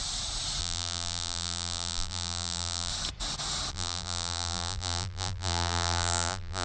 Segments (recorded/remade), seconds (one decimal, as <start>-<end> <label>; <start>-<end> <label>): 0.0-0.6 recorded; 0.6-2.9 remade; 2.9-3.7 recorded; 3.7-6.6 remade